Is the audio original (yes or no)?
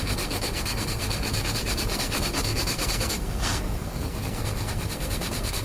no